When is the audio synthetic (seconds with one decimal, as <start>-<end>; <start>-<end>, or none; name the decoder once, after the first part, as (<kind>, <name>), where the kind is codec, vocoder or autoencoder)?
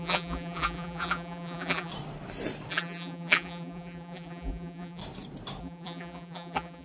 0.0-1.9 (vocoder, BigVGAN v2); 2.7-5.0; 5.6-6.8